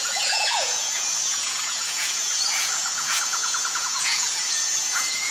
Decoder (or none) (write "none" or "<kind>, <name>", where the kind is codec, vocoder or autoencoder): vocoder, Vocos